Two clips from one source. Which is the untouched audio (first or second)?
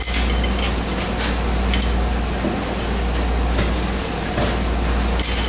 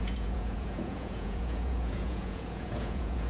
first